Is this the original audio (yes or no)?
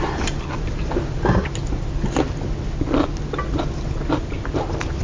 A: yes